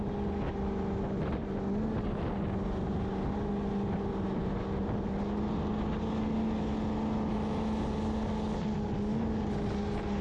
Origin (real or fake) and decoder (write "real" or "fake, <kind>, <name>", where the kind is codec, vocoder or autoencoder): real